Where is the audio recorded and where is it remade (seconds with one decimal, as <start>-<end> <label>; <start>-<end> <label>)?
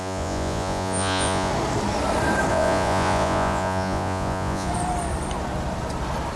0.0-1.5 remade; 1.5-2.5 recorded; 2.5-4.7 remade; 4.7-6.4 recorded